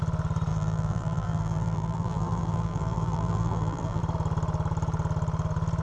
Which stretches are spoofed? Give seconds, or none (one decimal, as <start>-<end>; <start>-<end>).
0.5-4.0